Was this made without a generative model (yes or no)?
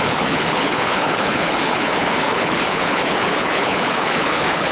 no